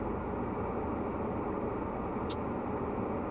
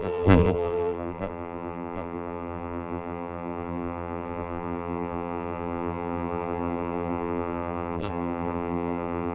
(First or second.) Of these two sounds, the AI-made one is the second